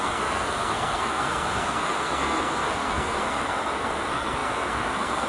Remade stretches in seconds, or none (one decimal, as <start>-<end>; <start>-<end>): 0.0-5.3